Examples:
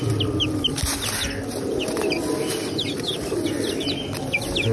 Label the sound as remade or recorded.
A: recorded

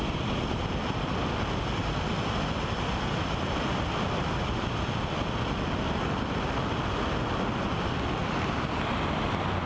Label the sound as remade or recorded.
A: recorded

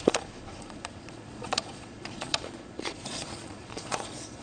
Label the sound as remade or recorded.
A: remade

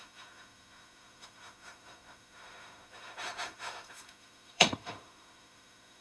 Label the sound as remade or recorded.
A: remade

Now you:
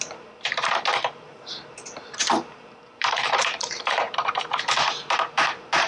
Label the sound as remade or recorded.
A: remade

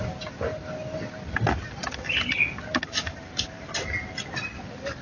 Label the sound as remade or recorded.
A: recorded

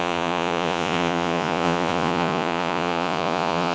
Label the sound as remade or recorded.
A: remade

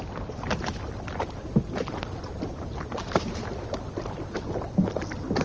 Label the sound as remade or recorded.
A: recorded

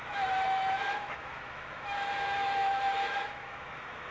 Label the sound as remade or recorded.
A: remade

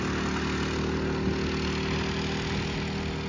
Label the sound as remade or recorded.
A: recorded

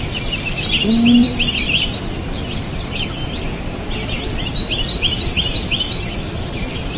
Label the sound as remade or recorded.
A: recorded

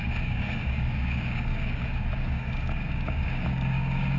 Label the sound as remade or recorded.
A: remade